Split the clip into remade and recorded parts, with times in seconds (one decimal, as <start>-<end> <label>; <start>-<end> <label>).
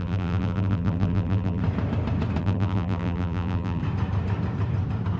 0.0-1.6 remade; 1.6-2.4 recorded; 2.4-3.8 remade; 3.8-5.2 recorded